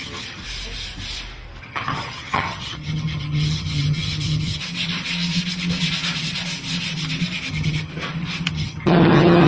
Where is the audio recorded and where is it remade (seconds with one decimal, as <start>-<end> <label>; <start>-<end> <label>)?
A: 0.0-0.4 remade; 0.4-1.6 recorded; 1.6-4.6 remade; 4.6-7.5 recorded; 7.5-7.9 remade; 7.9-8.5 recorded; 8.5-9.5 remade